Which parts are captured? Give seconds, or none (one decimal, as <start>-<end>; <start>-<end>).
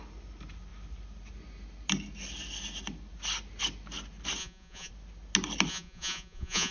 0.0-4.4; 4.9-5.7